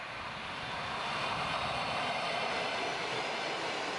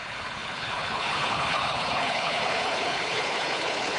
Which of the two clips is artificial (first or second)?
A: second